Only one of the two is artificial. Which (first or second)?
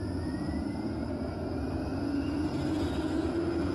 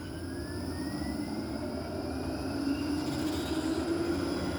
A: first